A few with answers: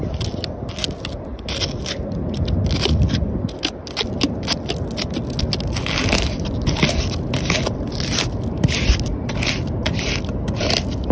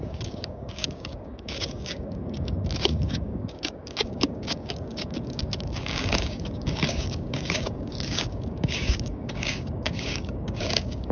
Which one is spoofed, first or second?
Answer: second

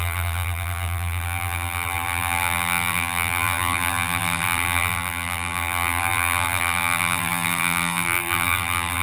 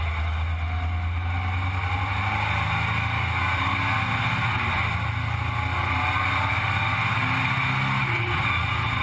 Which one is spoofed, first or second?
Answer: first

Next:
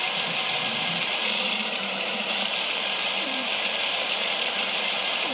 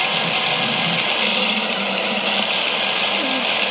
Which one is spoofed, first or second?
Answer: first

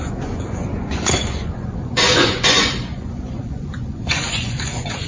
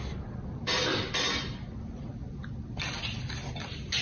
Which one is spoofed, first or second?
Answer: first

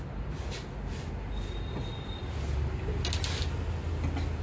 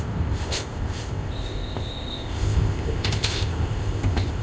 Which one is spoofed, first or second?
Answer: second